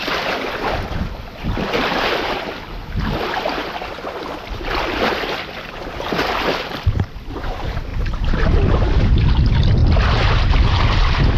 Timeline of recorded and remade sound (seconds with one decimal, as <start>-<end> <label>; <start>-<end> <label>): 0.0-7.9 remade; 7.9-9.3 recorded; 9.3-11.4 remade